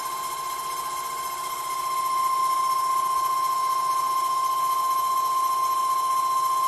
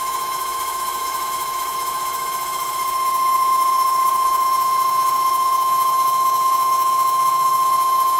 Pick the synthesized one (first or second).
second